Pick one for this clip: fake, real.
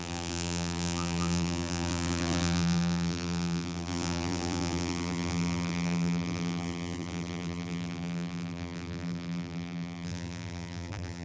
fake